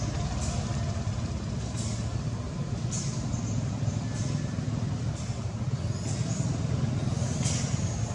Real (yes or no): yes